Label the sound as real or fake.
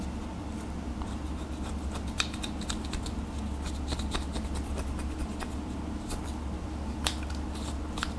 real